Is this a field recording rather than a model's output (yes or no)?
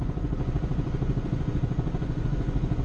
no